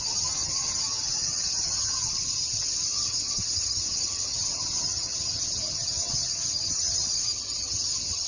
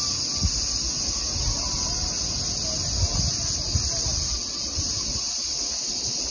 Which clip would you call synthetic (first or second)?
first